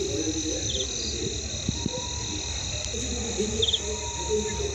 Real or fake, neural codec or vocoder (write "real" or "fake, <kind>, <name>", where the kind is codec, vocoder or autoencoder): real